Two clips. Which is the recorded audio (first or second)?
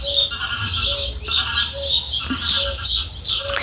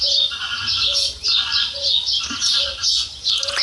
first